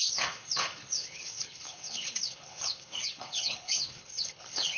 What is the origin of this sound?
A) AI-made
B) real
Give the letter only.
A